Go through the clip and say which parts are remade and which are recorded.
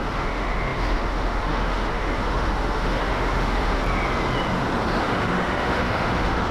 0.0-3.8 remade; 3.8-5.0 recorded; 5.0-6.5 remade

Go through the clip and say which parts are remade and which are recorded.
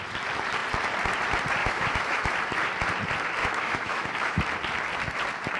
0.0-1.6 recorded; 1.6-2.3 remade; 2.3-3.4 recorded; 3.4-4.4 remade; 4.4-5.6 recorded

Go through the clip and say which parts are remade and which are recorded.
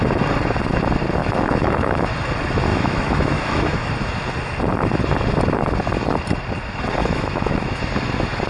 0.0-1.2 recorded; 1.2-2.0 remade; 2.0-2.7 recorded; 2.7-3.9 remade; 3.9-7.0 recorded; 7.0-7.8 remade; 7.8-8.5 recorded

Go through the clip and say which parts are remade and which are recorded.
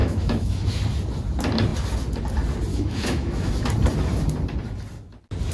0.0-0.8 remade; 0.8-2.7 recorded; 2.7-3.5 remade; 3.5-5.5 recorded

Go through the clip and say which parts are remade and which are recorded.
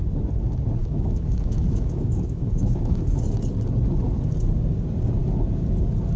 0.0-0.8 recorded; 0.8-3.2 remade; 3.2-6.2 recorded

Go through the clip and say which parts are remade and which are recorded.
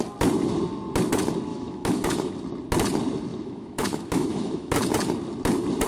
0.0-1.5 recorded; 1.5-2.3 remade; 2.3-3.3 recorded; 3.3-4.7 remade; 4.7-5.9 recorded